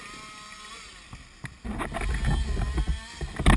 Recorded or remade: recorded